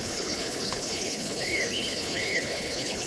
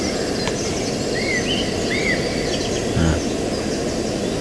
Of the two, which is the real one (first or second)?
second